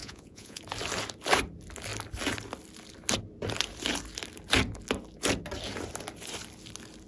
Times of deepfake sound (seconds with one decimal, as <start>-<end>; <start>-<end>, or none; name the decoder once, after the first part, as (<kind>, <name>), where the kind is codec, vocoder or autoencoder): 0.0-0.6 (vocoder, Vocos)